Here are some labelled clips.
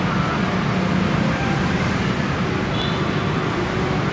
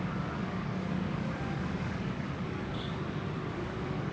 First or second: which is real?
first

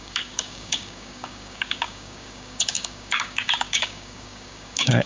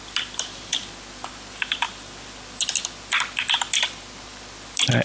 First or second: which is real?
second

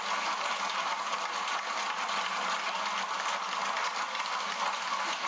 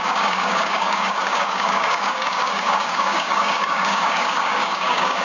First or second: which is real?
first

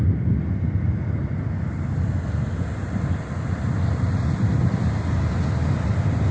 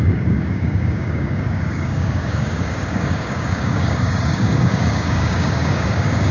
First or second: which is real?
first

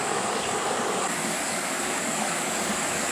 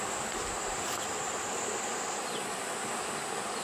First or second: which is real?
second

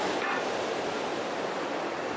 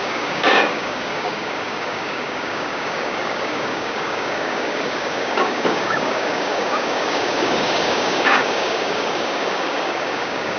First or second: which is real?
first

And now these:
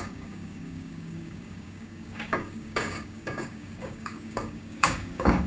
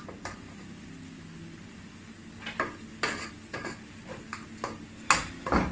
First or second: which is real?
second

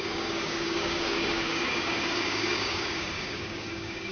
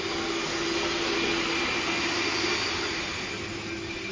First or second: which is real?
second